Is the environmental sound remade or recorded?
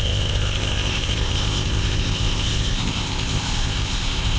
remade